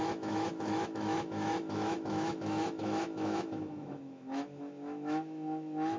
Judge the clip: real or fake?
fake